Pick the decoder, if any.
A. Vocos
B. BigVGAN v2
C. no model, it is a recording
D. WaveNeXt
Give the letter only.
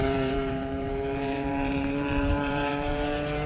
B